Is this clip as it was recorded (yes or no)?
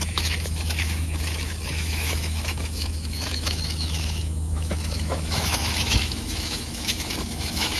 no